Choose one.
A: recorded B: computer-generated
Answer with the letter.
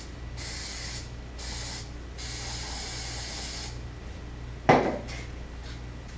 A